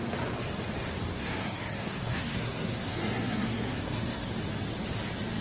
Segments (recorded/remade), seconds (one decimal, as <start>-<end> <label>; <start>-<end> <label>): 0.0-1.1 recorded; 1.1-4.3 remade; 4.3-5.4 recorded